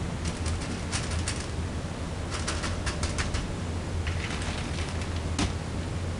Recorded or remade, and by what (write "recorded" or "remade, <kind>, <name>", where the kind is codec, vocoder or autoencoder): recorded